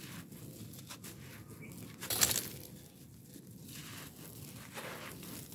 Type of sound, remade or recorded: recorded